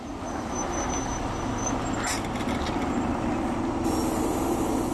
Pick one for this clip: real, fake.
real